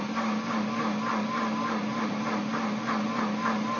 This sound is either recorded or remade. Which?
recorded